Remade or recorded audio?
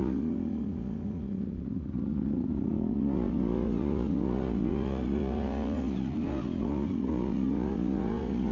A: remade